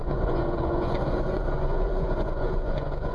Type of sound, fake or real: fake